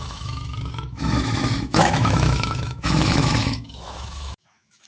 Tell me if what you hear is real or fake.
fake